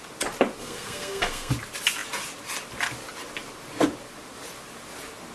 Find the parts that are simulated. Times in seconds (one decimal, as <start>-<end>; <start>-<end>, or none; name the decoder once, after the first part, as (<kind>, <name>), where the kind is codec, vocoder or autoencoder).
0.6-1.5 (codec, SNAC)